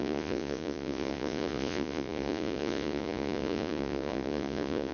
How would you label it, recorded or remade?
remade